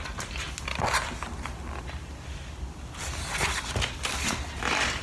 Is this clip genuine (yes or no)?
yes